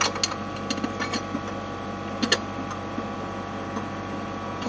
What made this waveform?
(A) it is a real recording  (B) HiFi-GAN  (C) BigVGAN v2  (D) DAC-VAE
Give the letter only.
A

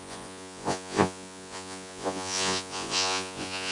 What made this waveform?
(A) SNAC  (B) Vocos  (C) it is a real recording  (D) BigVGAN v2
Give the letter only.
B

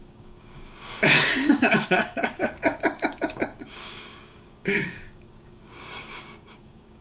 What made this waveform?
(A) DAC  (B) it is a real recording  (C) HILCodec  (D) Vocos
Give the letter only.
A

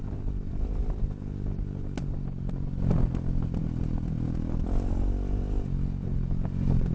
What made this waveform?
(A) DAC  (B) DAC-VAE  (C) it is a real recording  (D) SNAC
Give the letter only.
C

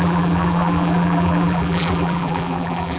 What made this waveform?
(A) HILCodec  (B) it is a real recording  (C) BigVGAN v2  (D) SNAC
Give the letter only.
C